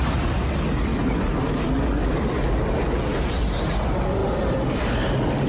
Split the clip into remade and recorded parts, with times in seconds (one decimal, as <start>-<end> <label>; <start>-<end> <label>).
0.0-5.5 recorded

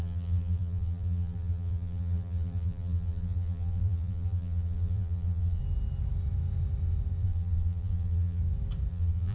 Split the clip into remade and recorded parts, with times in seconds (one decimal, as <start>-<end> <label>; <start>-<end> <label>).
0.0-5.6 remade; 5.6-7.2 recorded; 7.2-8.4 remade; 8.4-8.9 recorded; 8.9-9.3 remade